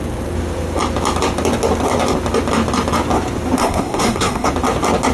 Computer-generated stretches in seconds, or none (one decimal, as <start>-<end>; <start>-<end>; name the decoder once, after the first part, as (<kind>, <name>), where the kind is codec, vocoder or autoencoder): 3.6-4.5 (codec, SNAC)